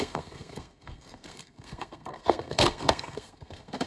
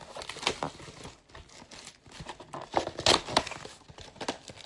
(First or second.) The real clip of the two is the second